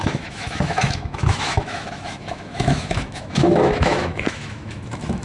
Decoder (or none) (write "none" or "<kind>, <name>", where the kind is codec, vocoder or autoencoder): autoencoder, DAC-VAE